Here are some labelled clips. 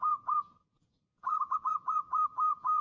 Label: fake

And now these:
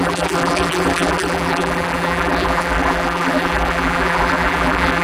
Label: fake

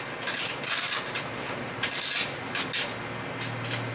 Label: real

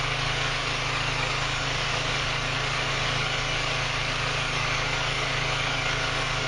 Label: fake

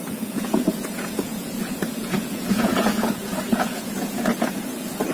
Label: fake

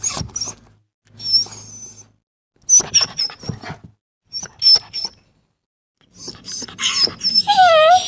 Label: real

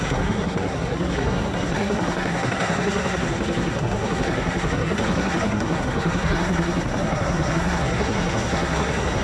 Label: fake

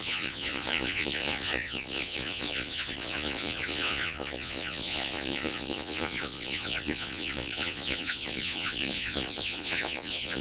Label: fake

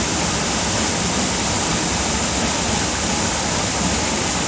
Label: real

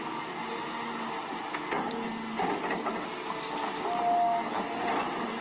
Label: real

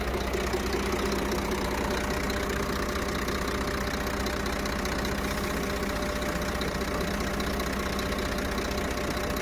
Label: real